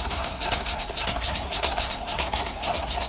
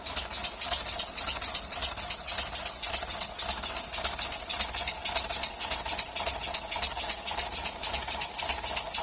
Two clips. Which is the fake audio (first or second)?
first